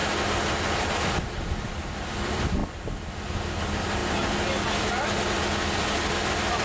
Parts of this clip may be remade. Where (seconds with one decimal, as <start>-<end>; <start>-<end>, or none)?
0.8-2.6; 3.6-4.0; 6.1-6.6